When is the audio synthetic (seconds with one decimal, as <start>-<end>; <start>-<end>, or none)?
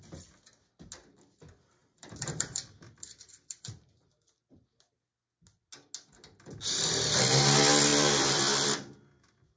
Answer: 1.8-4.3; 7.9-9.6